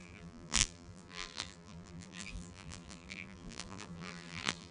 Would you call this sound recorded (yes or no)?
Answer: no